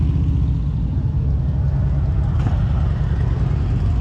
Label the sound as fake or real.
real